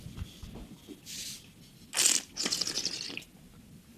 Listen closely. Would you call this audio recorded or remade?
recorded